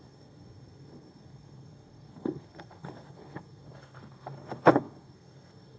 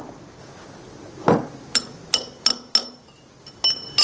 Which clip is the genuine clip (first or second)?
second